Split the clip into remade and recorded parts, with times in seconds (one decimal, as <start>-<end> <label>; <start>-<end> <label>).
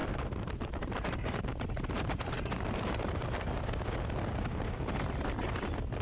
0.0-3.6 remade; 3.6-6.0 recorded